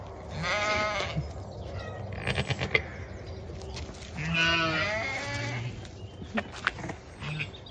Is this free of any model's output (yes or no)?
yes